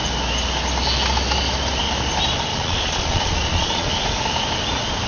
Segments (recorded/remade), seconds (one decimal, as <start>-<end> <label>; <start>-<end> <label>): 0.0-2.5 recorded; 2.5-3.9 remade; 3.9-5.1 recorded